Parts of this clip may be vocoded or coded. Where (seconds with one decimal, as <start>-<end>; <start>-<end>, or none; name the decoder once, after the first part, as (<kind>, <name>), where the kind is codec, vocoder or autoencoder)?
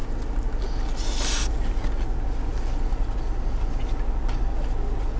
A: none